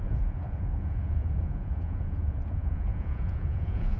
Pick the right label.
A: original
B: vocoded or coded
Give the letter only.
B